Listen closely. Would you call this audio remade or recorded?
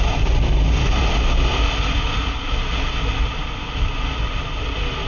recorded